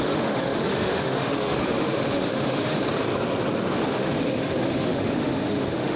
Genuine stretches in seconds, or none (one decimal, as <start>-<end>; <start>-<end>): 2.8-3.7